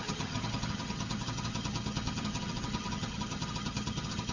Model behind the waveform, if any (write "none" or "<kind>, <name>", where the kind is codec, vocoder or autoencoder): vocoder, HiFi-GAN